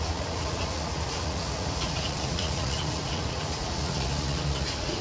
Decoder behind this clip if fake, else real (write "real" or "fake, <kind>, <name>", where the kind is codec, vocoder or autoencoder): fake, vocoder, Vocos